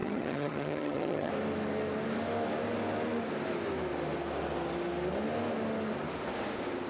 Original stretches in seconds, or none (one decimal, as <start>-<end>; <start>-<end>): 1.3-6.9